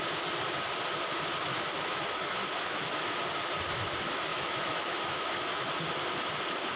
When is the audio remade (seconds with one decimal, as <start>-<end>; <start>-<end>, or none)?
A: 1.5-3.2; 4.3-5.7